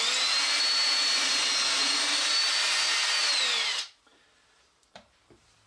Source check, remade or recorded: recorded